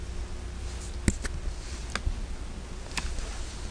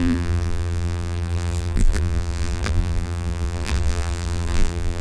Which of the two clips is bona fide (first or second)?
first